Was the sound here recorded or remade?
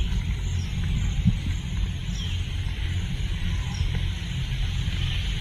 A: recorded